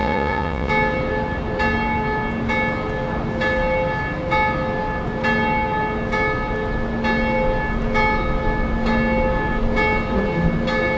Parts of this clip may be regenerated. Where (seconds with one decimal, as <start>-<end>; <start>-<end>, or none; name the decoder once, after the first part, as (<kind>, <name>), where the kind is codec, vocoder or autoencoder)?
0.0-0.7 (vocoder, Vocos)